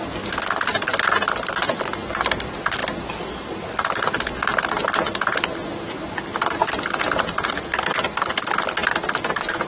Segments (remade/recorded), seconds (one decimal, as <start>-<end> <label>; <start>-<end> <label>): 0.0-2.8 recorded; 2.8-7.3 remade; 7.3-9.7 recorded